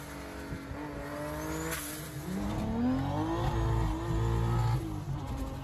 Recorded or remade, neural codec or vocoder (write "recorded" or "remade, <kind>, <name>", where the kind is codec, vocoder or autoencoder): recorded